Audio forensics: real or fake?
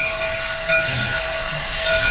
fake